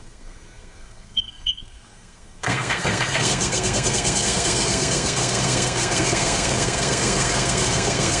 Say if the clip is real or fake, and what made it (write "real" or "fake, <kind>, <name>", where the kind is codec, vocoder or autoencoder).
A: fake, codec, SNAC